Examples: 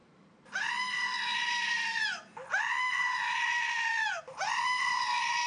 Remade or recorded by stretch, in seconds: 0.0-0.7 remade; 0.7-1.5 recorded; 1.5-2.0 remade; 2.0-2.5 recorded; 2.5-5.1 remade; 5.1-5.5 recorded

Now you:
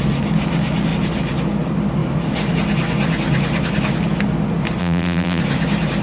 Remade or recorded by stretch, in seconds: 0.0-4.8 recorded; 4.8-5.4 remade; 5.4-6.0 recorded

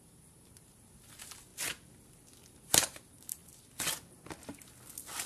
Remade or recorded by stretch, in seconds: 0.0-1.5 remade; 1.5-2.5 recorded; 2.5-3.4 remade; 3.4-5.3 recorded